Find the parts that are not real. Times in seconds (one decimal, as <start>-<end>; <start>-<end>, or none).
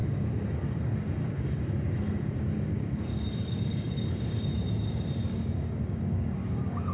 0.0-6.9